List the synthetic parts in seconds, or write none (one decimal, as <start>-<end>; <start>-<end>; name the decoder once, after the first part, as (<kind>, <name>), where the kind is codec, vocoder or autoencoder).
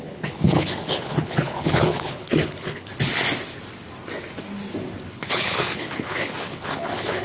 0.0-2.9 (codec, HILCodec); 5.1-7.2